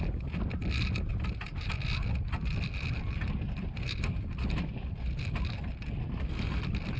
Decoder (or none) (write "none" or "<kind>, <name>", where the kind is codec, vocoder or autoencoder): none